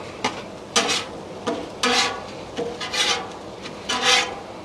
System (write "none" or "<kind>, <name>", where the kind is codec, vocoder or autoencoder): none